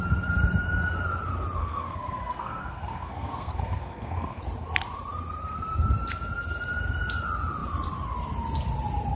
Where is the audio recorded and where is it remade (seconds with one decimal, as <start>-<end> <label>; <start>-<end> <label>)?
0.0-1.6 recorded; 1.6-4.4 remade; 4.4-9.2 recorded